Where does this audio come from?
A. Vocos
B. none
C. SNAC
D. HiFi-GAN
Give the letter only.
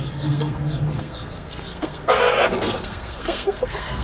C